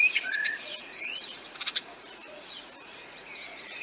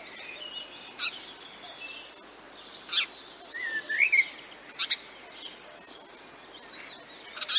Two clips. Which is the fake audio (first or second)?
first